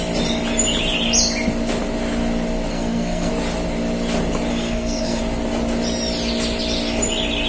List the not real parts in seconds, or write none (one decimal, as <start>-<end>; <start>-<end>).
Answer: 2.7-3.3; 4.5-5.2